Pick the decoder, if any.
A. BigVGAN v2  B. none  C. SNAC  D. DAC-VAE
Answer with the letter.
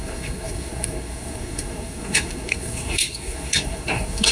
C